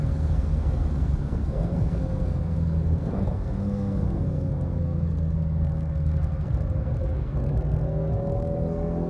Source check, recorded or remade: remade